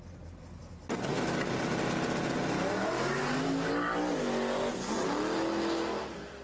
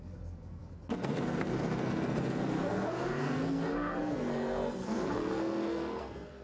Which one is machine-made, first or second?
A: second